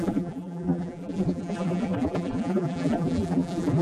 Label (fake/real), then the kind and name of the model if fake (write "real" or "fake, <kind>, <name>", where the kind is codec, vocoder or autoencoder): fake, vocoder, BigVGAN v2